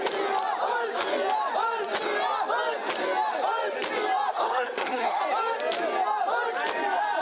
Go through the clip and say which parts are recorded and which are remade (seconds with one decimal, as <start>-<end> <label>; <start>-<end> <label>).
0.0-4.3 recorded; 4.3-5.2 remade; 5.2-7.2 recorded